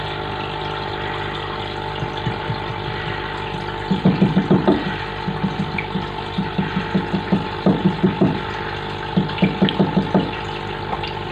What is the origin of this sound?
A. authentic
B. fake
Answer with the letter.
B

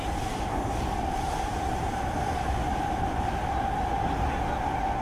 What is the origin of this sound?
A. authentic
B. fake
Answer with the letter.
A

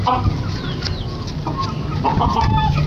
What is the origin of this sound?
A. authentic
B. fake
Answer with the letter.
A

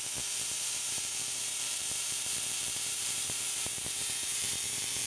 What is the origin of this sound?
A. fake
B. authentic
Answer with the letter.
A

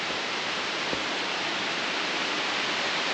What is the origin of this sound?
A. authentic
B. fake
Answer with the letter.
B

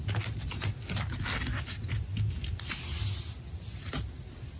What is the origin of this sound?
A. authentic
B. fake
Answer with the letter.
A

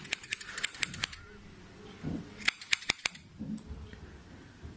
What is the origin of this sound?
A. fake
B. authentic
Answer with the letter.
B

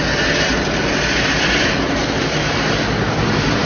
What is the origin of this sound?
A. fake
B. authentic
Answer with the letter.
A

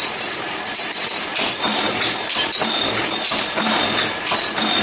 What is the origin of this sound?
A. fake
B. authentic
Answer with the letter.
A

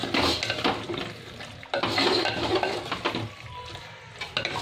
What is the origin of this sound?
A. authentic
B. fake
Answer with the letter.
A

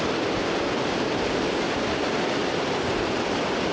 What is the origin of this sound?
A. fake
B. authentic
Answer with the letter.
A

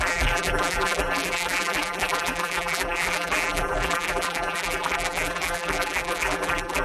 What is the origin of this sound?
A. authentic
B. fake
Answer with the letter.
B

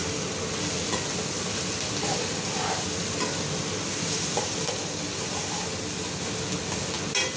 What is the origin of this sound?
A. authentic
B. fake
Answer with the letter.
A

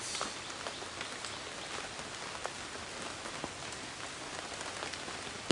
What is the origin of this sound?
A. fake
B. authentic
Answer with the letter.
B